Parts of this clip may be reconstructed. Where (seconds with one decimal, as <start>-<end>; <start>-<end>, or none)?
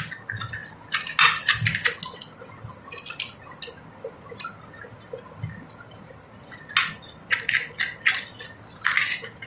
none